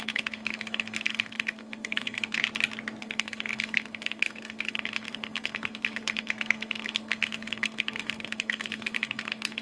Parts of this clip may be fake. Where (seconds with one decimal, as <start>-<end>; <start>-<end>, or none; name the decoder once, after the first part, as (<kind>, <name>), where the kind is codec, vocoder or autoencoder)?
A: 0.0-2.4 (codec, SNAC); 3.0-9.6